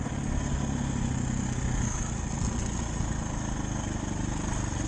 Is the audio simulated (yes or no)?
no